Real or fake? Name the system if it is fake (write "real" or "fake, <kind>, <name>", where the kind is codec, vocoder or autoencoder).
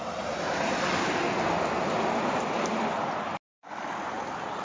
real